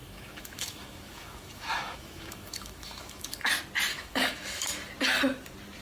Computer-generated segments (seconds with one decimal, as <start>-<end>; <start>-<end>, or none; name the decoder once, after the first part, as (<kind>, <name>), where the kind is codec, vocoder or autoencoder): 0.0-3.5 (autoencoder, DAC-VAE); 3.9-4.9